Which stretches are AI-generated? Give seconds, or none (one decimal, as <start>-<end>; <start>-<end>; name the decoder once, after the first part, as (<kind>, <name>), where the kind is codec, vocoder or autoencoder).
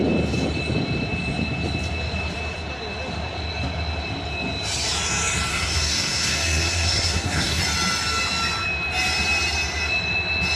5.5-7.6 (codec, SNAC)